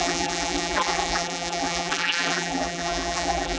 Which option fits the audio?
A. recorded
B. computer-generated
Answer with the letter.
B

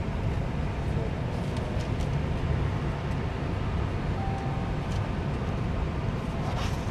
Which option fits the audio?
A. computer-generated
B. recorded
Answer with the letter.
B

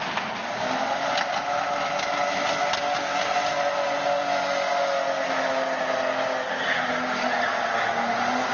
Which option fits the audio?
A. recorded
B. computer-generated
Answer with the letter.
A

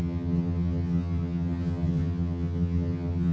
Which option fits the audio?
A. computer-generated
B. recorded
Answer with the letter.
A